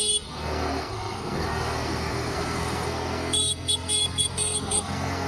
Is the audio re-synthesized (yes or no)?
yes